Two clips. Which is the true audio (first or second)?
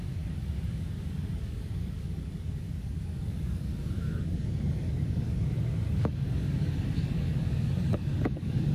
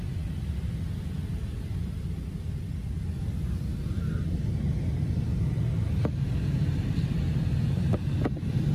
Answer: second